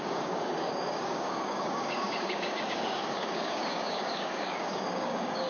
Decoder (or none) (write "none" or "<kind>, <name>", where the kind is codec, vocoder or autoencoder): codec, DAC